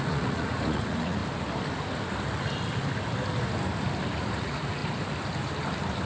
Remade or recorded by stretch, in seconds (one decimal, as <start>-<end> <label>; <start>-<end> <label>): 0.0-1.2 remade; 1.2-4.3 recorded; 4.3-4.8 remade; 4.8-6.1 recorded